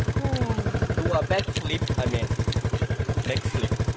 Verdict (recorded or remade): recorded